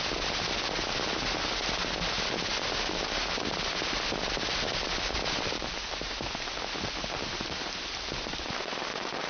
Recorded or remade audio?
recorded